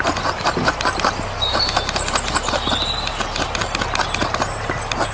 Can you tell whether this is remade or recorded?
recorded